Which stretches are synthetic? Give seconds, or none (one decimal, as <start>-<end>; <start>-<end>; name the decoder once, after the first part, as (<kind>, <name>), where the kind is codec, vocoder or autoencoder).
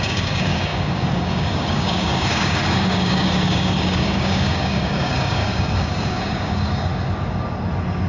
0.0-6.9 (codec, DAC)